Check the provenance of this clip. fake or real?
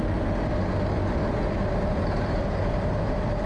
real